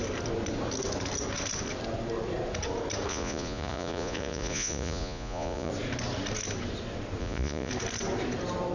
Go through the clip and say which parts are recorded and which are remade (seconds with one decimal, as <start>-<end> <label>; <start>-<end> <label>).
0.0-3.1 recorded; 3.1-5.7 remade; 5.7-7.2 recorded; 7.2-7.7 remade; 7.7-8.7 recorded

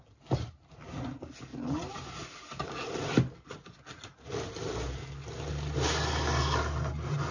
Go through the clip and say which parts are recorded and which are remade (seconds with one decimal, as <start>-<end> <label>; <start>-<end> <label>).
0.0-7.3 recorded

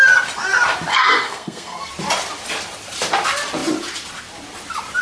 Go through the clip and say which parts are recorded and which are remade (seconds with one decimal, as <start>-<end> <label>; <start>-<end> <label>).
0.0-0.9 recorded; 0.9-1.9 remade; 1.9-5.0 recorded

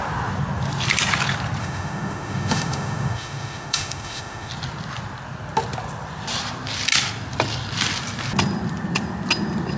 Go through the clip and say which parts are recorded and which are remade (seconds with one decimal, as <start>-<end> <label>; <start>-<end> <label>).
0.0-1.6 recorded; 1.6-4.5 remade; 4.5-9.8 recorded